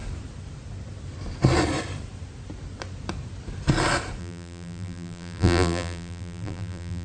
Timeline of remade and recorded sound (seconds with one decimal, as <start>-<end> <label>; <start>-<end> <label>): 0.0-4.2 recorded; 4.2-7.0 remade